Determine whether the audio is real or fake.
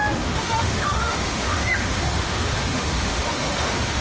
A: fake